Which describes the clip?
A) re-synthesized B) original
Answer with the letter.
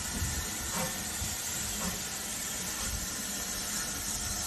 B